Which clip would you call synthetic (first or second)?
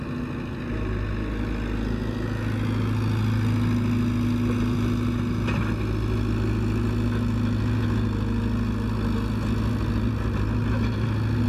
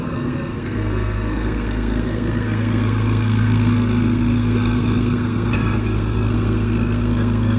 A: second